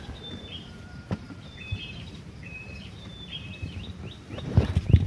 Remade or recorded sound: remade